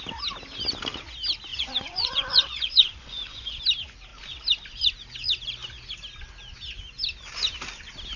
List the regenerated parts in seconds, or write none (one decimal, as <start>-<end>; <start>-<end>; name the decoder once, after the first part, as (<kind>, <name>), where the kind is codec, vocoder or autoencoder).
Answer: 1.5-3.6 (vocoder, Vocos)